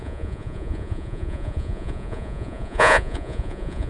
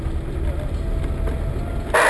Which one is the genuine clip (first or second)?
second